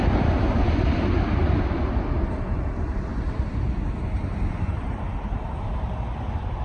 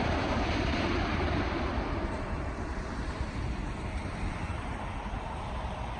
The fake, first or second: second